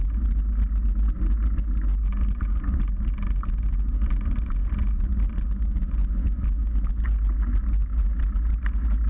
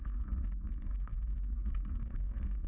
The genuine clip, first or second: first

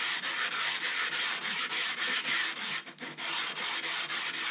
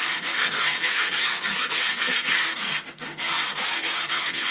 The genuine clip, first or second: first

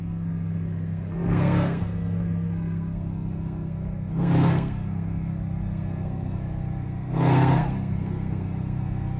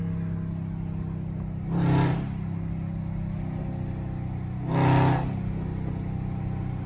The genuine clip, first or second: second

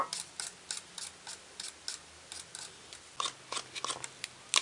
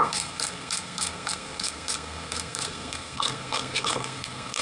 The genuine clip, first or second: first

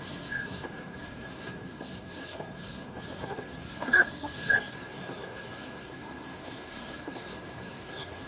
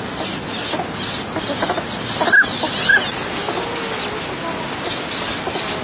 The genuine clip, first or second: second